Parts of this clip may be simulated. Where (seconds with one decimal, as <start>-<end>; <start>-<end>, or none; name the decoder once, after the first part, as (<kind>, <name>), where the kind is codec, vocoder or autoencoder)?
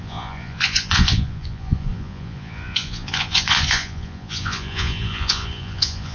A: 0.0-6.1 (vocoder, Vocos)